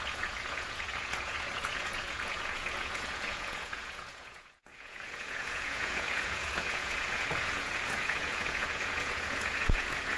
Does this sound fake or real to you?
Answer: fake